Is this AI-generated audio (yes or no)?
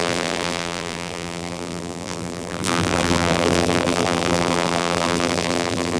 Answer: yes